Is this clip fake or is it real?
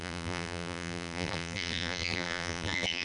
fake